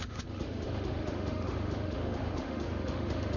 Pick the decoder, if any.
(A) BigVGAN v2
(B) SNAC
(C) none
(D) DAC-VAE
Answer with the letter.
D